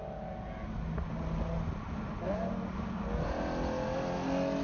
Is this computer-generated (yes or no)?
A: no